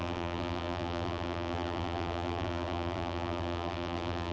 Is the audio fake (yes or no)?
yes